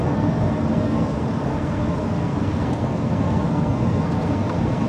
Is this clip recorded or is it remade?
remade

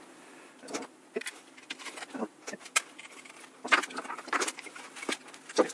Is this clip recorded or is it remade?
recorded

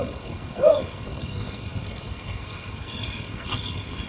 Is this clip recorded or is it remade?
remade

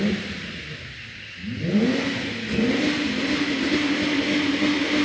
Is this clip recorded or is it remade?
recorded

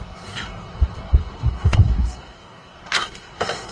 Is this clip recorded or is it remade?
remade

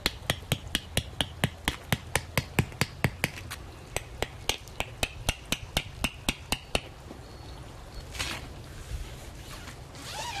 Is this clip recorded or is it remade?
recorded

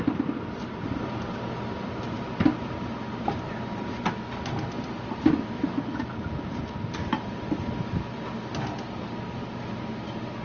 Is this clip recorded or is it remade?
recorded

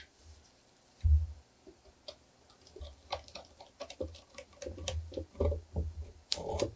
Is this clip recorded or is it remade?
recorded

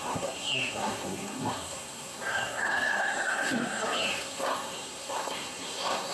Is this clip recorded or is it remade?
remade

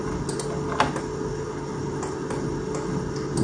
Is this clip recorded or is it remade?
recorded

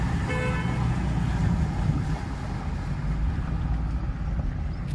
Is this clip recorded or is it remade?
recorded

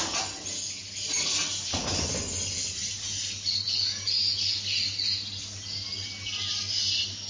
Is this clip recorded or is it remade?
recorded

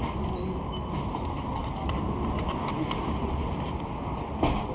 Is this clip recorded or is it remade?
recorded